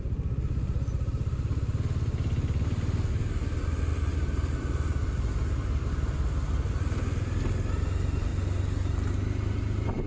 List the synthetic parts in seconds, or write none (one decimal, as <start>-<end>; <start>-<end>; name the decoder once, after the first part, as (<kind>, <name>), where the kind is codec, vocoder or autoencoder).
3.9-5.0 (vocoder, BigVGAN v2)